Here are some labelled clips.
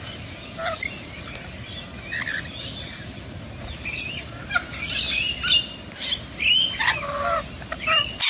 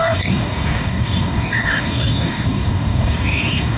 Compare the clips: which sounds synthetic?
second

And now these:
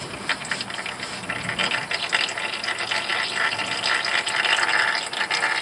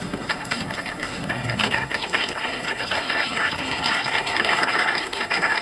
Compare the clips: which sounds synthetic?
second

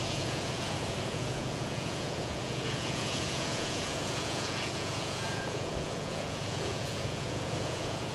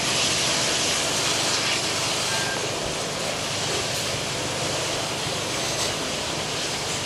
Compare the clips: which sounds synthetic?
first